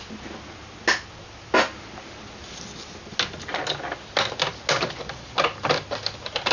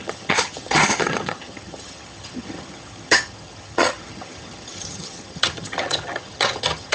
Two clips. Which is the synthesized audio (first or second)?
second